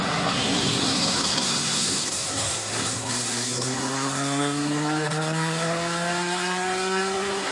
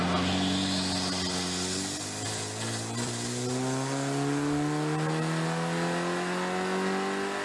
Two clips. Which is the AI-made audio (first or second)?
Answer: first